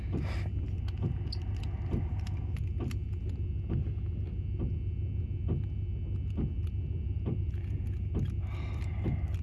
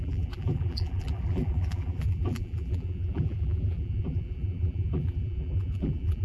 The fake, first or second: second